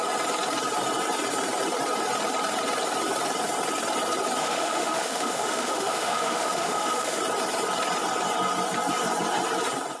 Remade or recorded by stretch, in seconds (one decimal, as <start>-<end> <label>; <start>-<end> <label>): 0.0-4.4 recorded; 4.4-7.2 remade; 7.2-10.0 recorded

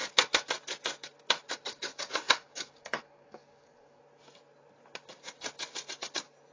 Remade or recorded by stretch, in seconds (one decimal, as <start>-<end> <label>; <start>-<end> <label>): 0.0-1.7 recorded; 1.7-4.0 remade; 4.0-6.5 recorded

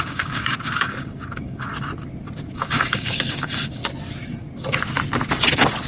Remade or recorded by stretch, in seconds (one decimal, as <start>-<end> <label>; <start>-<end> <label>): 0.0-1.7 remade; 1.7-2.5 recorded; 2.5-3.8 remade; 3.8-5.9 recorded

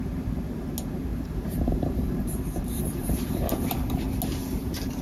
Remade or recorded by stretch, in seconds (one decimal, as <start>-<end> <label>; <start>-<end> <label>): 0.0-1.1 recorded; 1.1-3.9 remade; 3.9-4.4 recorded; 4.4-5.0 remade

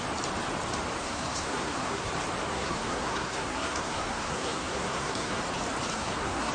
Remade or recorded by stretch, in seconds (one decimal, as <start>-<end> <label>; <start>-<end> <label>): 0.0-1.0 recorded; 1.0-2.1 remade; 2.1-2.5 recorded; 2.5-5.4 remade; 5.4-5.9 recorded; 5.9-6.5 remade

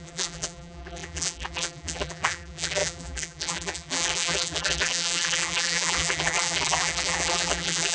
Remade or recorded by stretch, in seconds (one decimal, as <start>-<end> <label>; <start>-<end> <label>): 0.0-7.9 remade